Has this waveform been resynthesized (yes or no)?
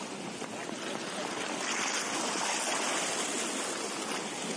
no